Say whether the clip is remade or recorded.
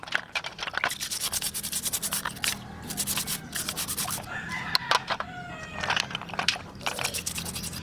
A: recorded